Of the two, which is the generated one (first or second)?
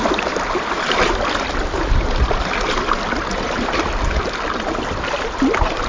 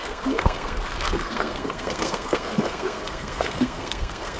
second